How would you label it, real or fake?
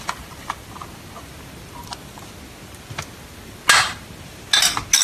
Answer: real